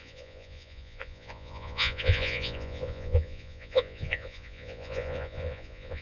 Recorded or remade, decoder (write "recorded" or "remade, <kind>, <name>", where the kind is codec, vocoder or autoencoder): remade, vocoder, Vocos